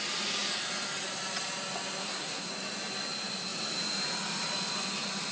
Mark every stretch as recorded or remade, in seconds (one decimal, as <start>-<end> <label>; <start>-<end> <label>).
0.0-2.0 recorded; 2.0-2.5 remade; 2.5-5.3 recorded